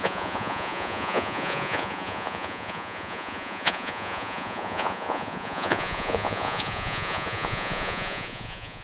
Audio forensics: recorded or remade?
remade